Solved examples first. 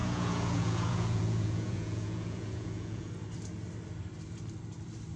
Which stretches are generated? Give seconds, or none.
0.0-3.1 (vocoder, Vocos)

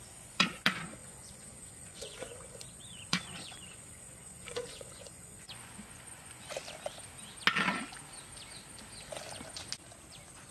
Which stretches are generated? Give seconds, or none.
0.0-6.6 (vocoder, Vocos)

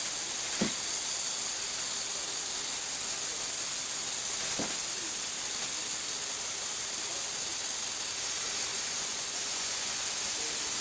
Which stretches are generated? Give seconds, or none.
8.7-10.0 (vocoder, Vocos)

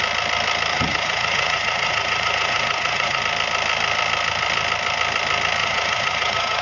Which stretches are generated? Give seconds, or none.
0.7-3.2 (vocoder, Vocos); 5.6-6.6

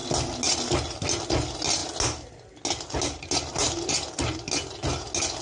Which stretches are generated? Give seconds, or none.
none

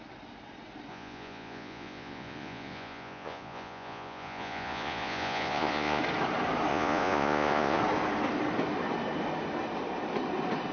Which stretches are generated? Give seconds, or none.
0.9-6.0 (vocoder, Vocos); 6.7-7.8

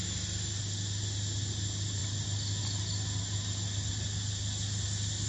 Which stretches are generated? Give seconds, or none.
none

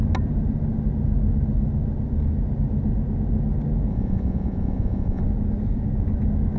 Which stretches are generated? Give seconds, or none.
3.9-5.2 (vocoder, Vocos)